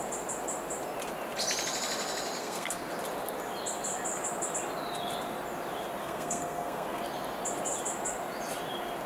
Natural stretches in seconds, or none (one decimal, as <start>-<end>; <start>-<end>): 0.0-2.4; 2.9-6.0; 7.0-9.1